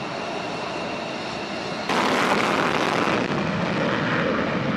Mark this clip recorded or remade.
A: recorded